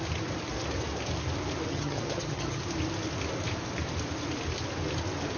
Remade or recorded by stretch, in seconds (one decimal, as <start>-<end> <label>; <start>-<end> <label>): 0.0-1.7 recorded; 1.7-2.6 remade; 2.6-5.4 recorded